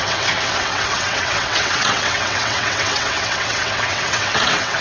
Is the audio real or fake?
fake